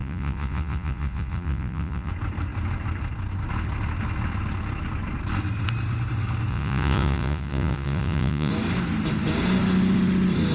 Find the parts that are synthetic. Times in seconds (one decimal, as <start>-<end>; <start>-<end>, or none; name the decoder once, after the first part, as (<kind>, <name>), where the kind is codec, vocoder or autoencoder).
0.0-2.1 (vocoder, Vocos); 6.5-8.5